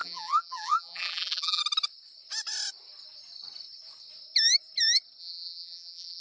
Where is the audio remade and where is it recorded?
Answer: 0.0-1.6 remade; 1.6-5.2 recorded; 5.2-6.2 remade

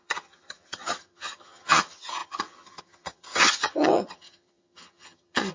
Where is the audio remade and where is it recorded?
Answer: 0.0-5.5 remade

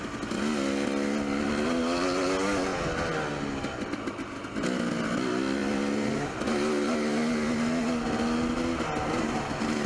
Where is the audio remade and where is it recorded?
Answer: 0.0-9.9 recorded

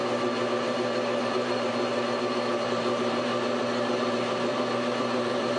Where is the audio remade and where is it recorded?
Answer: 0.0-1.2 recorded; 1.2-1.9 remade; 1.9-2.5 recorded; 2.5-3.3 remade; 3.3-4.1 recorded; 4.1-5.6 remade